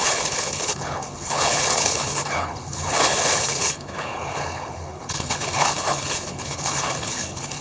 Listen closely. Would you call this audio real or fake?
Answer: fake